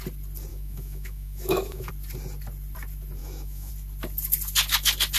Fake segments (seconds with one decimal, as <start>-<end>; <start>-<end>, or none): 0.5-1.9; 3.2-3.7